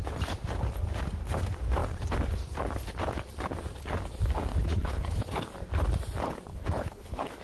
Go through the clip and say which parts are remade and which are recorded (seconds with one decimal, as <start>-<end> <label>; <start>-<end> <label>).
0.0-4.5 recorded; 4.5-5.5 remade; 5.5-6.5 recorded; 6.5-7.4 remade